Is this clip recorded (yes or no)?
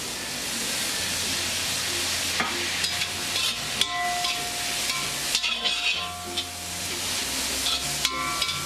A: yes